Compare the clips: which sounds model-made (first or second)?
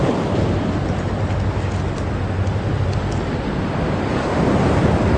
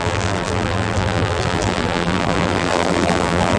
second